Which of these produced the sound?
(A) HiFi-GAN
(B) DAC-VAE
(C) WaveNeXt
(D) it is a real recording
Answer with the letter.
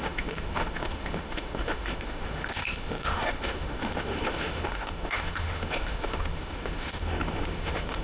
B